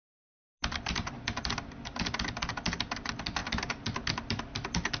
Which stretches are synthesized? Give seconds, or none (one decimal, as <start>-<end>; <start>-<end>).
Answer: none